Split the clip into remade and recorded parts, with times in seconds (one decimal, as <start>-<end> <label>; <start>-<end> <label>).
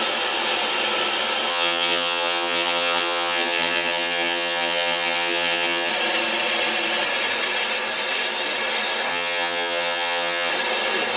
0.0-1.5 recorded; 1.5-5.9 remade; 5.9-9.1 recorded; 9.1-10.5 remade; 10.5-11.2 recorded